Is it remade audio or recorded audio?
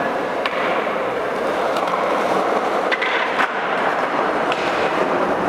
remade